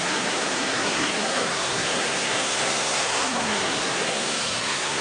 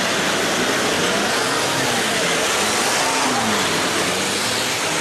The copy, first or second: first